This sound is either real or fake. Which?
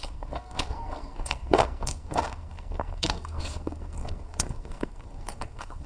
fake